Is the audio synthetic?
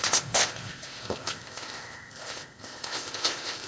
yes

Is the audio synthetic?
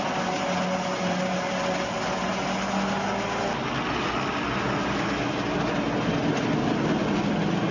no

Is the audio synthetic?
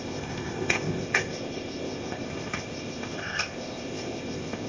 yes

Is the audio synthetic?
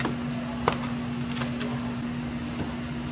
no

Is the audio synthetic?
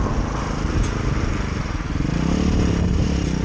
no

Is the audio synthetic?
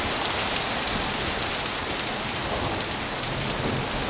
no